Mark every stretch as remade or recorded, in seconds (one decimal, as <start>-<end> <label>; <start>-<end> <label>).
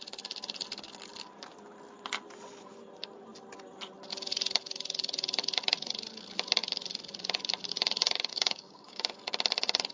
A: 0.0-8.3 recorded; 8.3-9.0 remade; 9.0-9.9 recorded